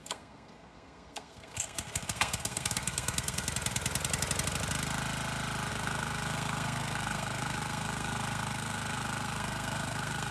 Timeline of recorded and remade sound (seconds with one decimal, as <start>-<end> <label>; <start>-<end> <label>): 0.0-3.5 remade; 3.5-5.7 recorded; 5.7-10.3 remade